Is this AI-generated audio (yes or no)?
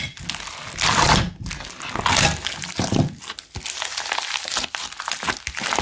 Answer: no